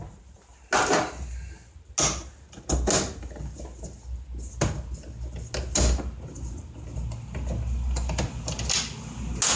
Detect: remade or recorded recorded